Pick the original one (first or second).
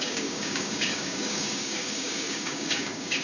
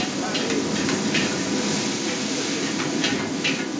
second